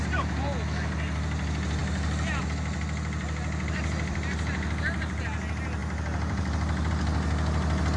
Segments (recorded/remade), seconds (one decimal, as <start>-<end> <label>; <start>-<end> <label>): 0.0-8.0 recorded